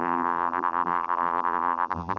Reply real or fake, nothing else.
fake